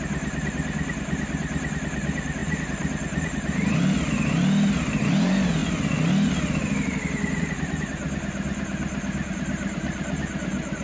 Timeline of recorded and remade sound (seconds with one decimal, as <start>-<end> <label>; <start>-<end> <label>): 0.0-10.8 recorded